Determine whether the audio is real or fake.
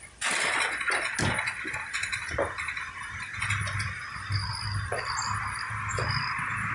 real